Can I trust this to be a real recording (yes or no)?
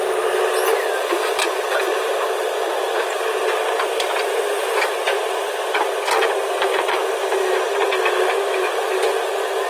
yes